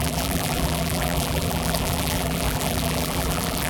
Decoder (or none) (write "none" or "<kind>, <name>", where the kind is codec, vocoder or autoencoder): vocoder, BigVGAN v2